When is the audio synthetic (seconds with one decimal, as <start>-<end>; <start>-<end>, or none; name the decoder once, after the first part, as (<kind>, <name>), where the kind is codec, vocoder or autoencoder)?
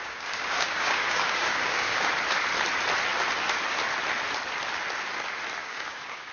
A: 0.0-2.1 (codec, DAC); 5.6-6.3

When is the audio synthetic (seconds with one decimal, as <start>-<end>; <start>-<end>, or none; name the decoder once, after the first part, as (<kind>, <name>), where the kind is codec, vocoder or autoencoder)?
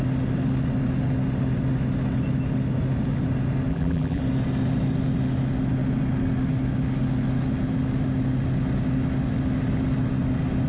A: 3.7-4.2 (vocoder, BigVGAN v2)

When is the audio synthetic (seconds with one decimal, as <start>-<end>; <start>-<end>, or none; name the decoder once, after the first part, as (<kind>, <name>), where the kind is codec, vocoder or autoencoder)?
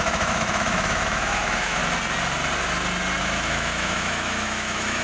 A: 0.0-1.8 (autoencoder, DAC-VAE); 3.2-5.0